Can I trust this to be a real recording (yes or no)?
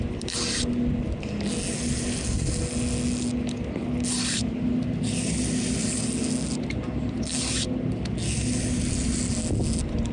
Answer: yes